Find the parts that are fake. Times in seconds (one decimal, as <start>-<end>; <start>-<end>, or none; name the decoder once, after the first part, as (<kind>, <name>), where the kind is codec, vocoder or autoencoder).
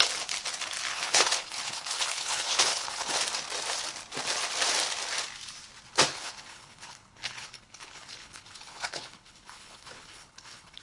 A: 0.9-3.2 (codec, HILCodec); 6.1-10.8